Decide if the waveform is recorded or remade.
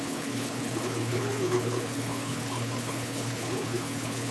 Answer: remade